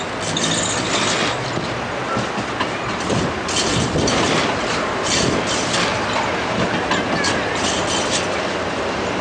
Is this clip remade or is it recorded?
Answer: recorded